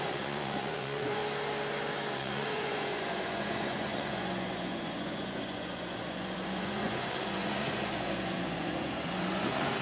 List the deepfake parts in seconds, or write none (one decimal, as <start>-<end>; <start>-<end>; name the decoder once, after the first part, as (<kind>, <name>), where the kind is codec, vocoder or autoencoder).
0.0-1.2 (vocoder, Vocos); 2.1-9.8